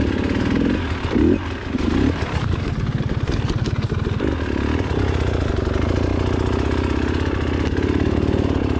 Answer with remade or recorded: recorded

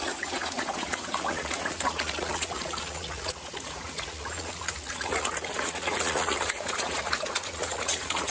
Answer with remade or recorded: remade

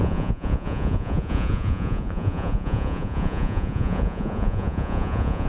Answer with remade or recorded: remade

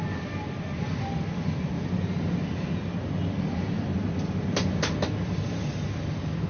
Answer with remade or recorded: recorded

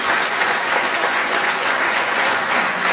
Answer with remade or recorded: remade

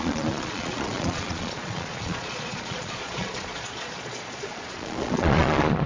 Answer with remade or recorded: remade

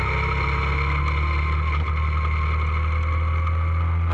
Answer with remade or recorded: recorded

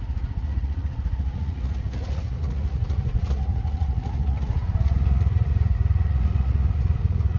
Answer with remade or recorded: remade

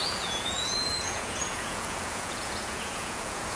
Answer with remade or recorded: remade